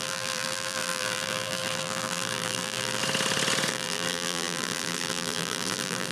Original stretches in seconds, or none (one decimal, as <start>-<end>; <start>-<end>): 3.0-3.7